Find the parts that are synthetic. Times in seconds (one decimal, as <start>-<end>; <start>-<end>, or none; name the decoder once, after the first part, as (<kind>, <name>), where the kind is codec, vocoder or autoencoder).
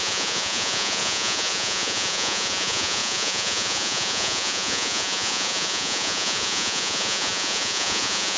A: 0.0-8.4 (vocoder, Vocos)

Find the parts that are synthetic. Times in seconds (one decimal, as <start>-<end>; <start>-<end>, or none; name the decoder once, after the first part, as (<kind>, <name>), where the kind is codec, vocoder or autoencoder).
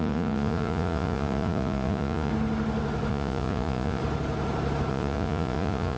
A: 0.0-2.3 (vocoder, Vocos); 3.1-4.0; 4.9-6.0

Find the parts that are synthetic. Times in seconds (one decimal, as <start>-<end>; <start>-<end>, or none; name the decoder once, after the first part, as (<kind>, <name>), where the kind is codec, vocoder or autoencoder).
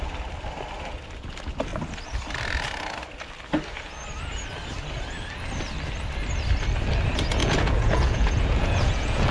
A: 7.4-9.3 (vocoder, Vocos)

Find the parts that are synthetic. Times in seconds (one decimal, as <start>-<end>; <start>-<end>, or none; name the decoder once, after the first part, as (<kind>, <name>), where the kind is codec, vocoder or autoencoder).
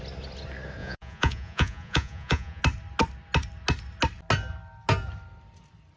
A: 0.8-2.6 (vocoder, Vocos)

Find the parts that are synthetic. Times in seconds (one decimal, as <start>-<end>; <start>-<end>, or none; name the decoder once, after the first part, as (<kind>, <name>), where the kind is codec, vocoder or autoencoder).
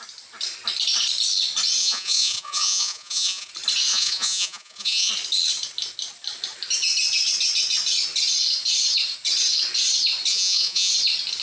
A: 1.8-3.5 (vocoder, Vocos); 3.9-5.1; 10.3-10.9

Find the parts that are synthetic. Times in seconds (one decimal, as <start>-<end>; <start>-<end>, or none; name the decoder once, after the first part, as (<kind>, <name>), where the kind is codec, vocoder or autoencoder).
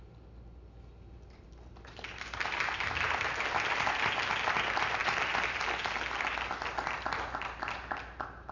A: none